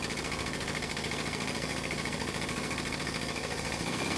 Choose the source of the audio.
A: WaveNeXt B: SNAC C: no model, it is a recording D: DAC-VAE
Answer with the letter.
B